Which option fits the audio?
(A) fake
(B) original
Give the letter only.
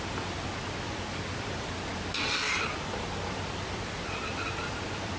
B